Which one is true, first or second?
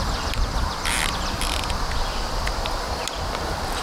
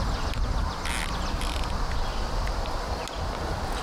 second